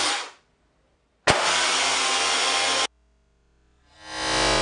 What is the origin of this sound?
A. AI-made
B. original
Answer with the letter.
B